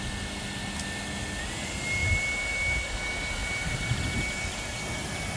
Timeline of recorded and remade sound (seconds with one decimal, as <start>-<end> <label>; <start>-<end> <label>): 0.0-3.4 recorded; 3.4-4.0 remade; 4.0-5.4 recorded